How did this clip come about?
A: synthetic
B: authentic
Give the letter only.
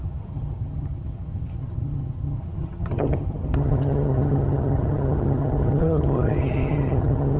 A